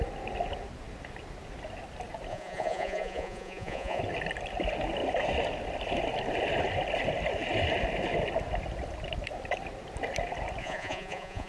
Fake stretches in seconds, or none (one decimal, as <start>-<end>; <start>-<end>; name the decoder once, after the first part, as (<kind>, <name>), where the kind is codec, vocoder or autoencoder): 2.3-4.0 (vocoder, Vocos); 10.6-11.5